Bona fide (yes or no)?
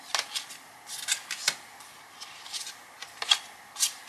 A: yes